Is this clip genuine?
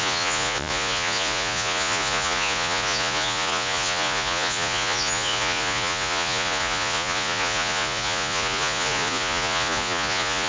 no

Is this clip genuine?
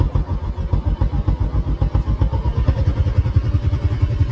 yes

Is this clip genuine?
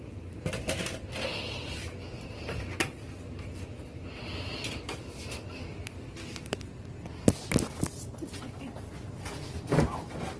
yes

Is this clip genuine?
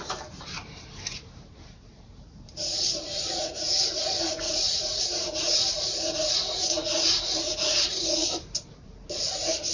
no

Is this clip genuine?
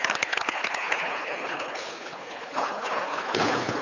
no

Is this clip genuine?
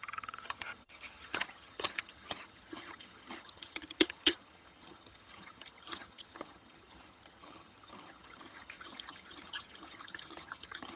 no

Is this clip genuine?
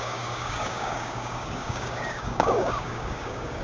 no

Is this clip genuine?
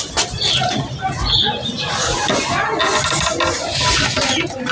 yes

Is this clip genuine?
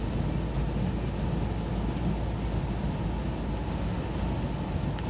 yes